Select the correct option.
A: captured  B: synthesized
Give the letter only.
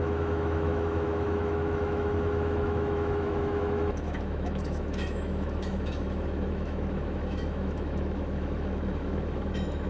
B